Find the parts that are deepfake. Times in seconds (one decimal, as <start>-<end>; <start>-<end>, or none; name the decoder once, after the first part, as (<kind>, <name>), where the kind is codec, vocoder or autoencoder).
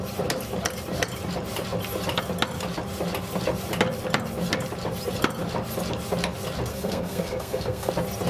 6.7-7.9 (codec, SNAC)